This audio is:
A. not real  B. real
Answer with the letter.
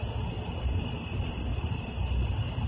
A